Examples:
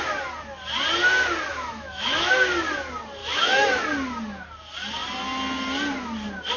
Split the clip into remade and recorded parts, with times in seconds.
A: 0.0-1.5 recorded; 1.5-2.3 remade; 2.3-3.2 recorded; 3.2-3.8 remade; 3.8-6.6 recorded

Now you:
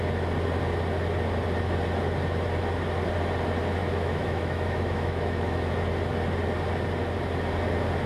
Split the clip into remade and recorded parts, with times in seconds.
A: 0.0-3.8 recorded; 3.8-5.7 remade; 5.7-8.1 recorded

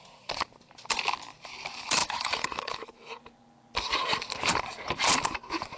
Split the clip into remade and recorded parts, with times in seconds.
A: 0.0-2.0 recorded; 2.0-3.2 remade; 3.2-5.8 recorded

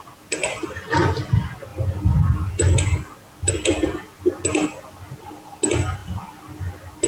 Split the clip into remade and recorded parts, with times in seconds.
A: 0.0-7.1 recorded

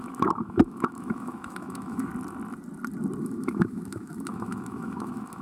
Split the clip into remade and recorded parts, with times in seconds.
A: 0.0-2.1 remade; 2.1-3.2 recorded; 3.2-5.4 remade